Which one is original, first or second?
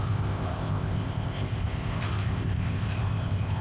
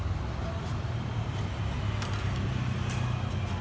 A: second